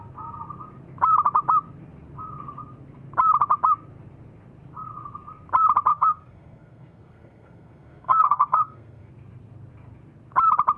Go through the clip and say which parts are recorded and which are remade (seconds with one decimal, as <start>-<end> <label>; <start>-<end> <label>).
0.0-5.9 recorded; 5.9-9.1 remade; 9.1-10.8 recorded